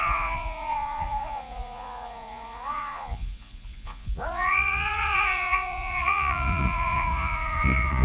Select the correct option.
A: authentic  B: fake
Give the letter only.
B